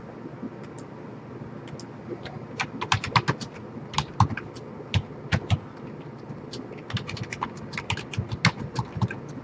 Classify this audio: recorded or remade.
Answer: recorded